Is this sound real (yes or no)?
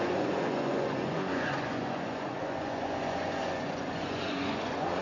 no